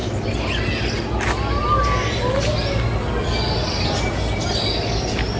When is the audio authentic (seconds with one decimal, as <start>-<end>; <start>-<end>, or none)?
0.0-5.4